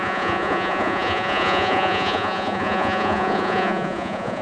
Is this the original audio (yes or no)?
no